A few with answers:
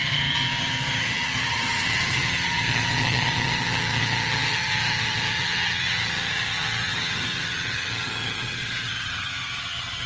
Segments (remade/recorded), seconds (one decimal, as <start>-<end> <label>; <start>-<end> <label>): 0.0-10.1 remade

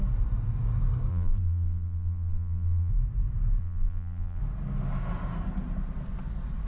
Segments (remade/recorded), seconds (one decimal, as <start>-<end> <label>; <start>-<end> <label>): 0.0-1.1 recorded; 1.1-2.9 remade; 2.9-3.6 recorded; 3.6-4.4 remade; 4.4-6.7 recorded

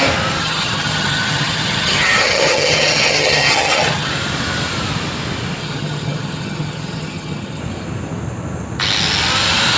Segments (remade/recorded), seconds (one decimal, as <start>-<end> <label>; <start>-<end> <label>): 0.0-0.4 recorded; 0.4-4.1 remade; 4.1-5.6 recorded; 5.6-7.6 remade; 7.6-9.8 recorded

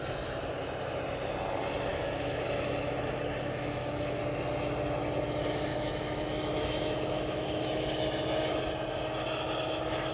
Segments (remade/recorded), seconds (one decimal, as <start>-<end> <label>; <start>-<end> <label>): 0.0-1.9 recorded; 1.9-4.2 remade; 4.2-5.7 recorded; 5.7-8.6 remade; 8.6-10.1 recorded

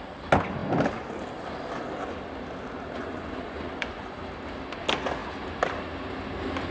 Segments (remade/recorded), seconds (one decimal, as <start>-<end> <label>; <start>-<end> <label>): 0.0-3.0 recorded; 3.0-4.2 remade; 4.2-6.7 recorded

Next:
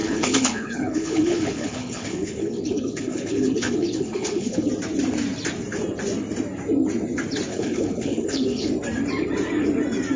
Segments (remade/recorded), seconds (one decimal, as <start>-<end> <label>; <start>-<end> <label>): 0.0-4.7 remade; 4.7-7.5 recorded; 7.5-8.7 remade; 8.7-10.2 recorded

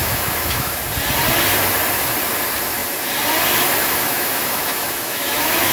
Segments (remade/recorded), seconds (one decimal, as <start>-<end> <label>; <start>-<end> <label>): 0.0-0.8 remade; 0.8-3.8 recorded; 3.8-5.7 remade